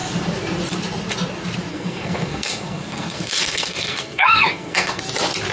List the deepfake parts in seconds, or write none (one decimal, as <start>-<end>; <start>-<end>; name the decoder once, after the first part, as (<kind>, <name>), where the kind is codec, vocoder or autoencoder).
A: 1.7-5.0 (codec, SNAC)